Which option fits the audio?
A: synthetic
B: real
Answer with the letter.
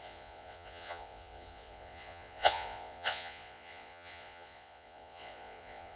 A